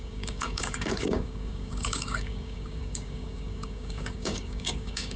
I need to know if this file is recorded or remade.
remade